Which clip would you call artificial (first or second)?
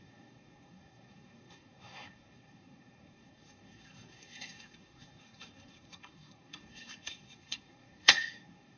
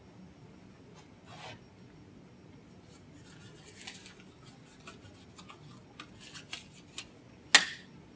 first